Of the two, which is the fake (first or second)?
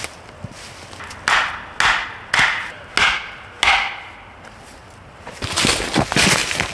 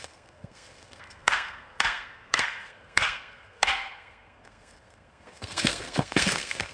second